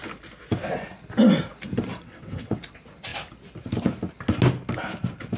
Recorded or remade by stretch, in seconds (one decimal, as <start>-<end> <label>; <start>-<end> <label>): 0.0-1.9 recorded; 1.9-2.6 remade; 2.6-5.4 recorded